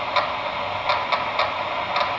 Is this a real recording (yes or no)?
yes